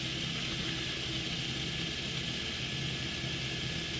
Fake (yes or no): no